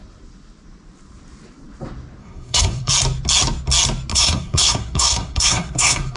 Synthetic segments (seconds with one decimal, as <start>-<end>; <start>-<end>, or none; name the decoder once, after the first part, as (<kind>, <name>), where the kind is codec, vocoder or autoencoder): 2.2-2.9 (codec, SNAC); 4.1-6.2